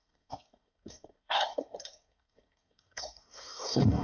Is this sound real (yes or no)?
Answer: no